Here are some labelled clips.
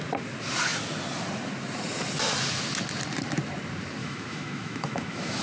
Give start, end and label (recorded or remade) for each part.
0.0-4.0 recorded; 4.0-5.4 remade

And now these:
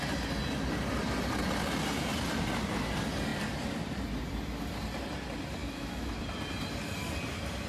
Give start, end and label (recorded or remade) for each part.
0.0-5.6 recorded; 5.6-6.2 remade; 6.2-7.7 recorded

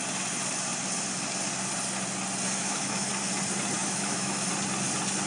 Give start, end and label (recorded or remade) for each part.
0.0-2.6 recorded; 2.6-3.1 remade; 3.1-3.8 recorded; 3.8-4.5 remade; 4.5-5.3 recorded

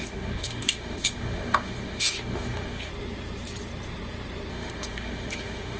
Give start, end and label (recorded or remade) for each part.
0.0-2.9 remade; 2.9-4.5 recorded; 4.5-5.8 remade

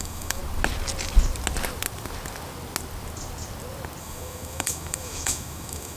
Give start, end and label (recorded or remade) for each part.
0.0-0.4 remade; 0.4-4.0 recorded; 4.0-6.0 remade

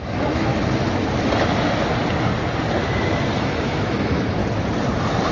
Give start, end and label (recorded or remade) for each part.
0.0-0.5 remade; 0.5-3.4 recorded; 3.4-4.4 remade; 4.4-5.3 recorded

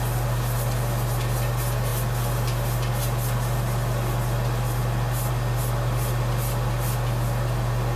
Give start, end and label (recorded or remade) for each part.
0.0-8.0 recorded

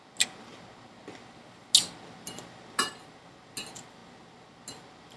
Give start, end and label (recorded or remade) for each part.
0.0-5.2 recorded